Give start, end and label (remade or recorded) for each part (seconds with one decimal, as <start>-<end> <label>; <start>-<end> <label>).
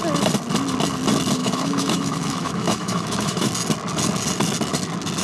0.0-1.4 recorded; 1.4-3.5 remade; 3.5-5.2 recorded